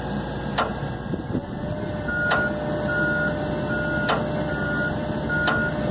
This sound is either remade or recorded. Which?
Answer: recorded